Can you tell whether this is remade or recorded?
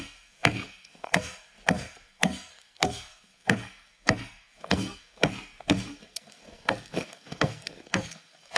remade